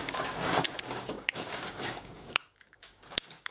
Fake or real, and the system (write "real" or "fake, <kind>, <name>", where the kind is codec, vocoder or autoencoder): fake, codec, DAC